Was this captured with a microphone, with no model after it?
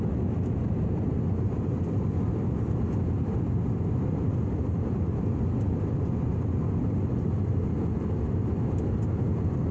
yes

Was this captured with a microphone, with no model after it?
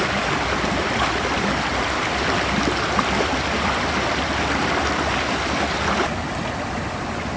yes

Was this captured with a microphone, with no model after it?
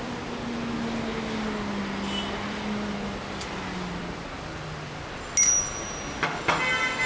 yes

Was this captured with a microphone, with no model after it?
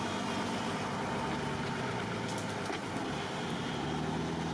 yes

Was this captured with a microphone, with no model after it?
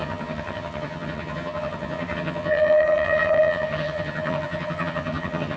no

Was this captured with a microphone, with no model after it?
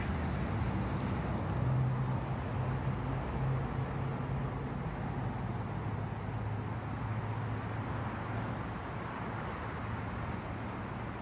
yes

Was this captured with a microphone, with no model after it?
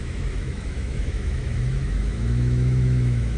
no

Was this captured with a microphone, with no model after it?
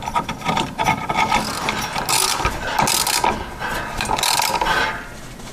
yes